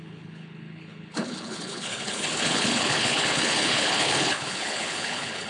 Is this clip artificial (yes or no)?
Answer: yes